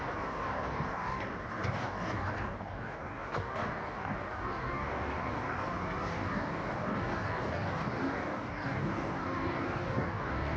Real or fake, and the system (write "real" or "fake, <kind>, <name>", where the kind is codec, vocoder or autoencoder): fake, codec, DAC